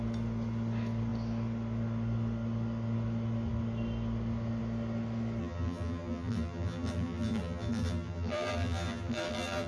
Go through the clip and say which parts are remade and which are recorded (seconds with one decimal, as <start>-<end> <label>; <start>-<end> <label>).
0.0-5.4 recorded; 5.4-9.7 remade